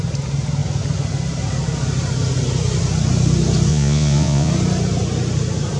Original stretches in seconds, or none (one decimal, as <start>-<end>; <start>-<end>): 0.0-3.7; 4.5-5.8